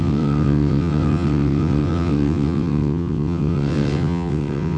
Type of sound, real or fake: fake